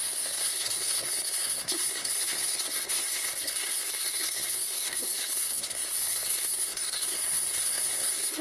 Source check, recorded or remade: remade